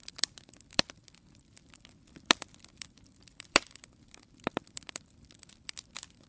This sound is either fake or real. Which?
fake